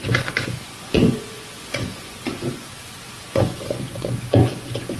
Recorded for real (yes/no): no